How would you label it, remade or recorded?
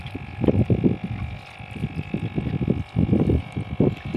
recorded